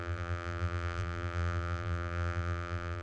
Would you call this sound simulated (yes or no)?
yes